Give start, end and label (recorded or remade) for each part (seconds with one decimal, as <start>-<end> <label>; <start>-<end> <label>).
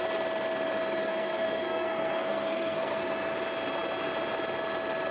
0.0-1.0 recorded; 1.0-3.0 remade; 3.0-5.1 recorded